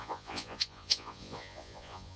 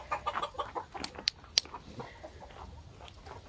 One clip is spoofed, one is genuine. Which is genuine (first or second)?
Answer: second